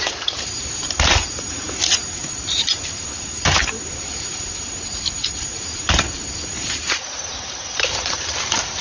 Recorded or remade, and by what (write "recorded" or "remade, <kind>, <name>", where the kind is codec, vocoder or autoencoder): remade, vocoder, BigVGAN v2